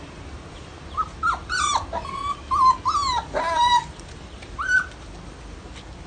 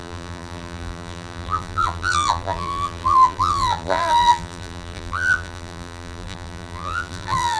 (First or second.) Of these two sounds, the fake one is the second